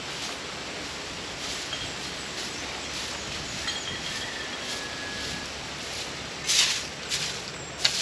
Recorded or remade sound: recorded